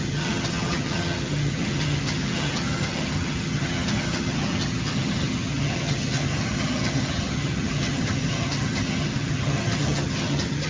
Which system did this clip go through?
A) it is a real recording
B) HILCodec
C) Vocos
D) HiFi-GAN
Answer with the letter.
D